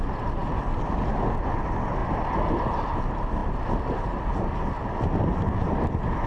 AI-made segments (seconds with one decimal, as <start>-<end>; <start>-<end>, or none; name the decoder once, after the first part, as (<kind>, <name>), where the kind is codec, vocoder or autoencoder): 2.0-2.5 (vocoder, BigVGAN v2)